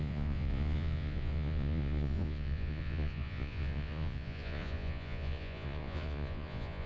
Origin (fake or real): fake